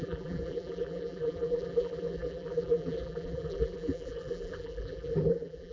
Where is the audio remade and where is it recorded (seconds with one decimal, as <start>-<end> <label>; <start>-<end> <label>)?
0.0-5.7 remade